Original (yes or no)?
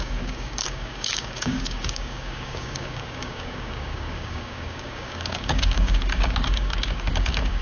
no